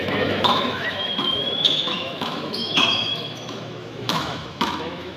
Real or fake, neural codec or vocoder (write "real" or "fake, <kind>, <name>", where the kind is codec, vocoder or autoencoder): fake, autoencoder, DAC-VAE